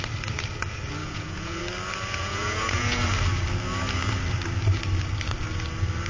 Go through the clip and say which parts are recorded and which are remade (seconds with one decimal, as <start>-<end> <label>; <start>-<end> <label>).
0.0-1.0 recorded; 1.0-1.6 remade; 1.6-2.2 recorded; 2.2-3.0 remade; 3.0-6.1 recorded